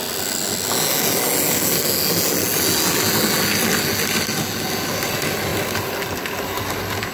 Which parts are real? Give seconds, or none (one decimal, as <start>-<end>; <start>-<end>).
0.0-7.1